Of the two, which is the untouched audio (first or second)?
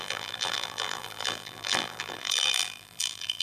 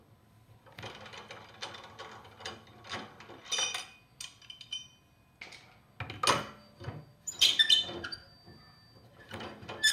second